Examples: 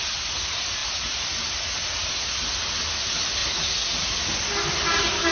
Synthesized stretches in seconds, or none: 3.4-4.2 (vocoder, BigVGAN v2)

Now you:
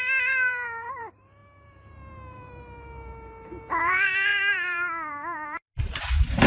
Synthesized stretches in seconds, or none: 0.0-6.5 (vocoder, BigVGAN v2)